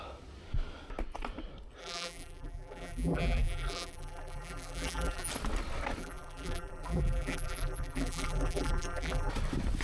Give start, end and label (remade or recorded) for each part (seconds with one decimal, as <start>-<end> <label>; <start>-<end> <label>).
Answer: 0.0-1.8 recorded; 1.8-5.3 remade; 5.3-6.0 recorded; 6.0-9.3 remade; 9.3-9.8 recorded